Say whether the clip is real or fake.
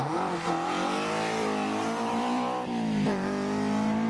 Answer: fake